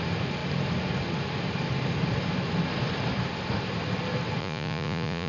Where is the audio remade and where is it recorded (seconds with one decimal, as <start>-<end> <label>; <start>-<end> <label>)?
0.0-4.4 recorded; 4.4-5.3 remade